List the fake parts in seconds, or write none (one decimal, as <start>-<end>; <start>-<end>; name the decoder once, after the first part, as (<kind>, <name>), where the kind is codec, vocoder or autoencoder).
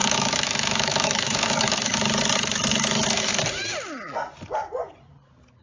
0.0-3.4 (autoencoder, DAC-VAE)